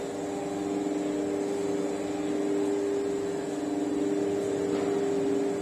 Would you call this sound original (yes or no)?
yes